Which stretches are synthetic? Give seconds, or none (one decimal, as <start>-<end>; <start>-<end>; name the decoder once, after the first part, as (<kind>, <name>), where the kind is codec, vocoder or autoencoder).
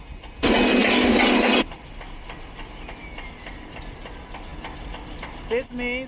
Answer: none